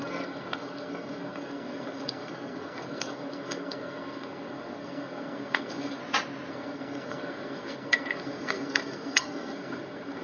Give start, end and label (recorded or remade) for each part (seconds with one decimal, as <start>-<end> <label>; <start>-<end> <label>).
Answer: 0.0-6.0 remade; 6.0-6.5 recorded; 6.5-10.2 remade